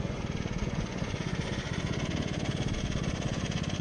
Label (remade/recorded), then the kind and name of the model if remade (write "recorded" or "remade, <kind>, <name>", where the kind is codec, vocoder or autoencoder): remade, vocoder, Vocos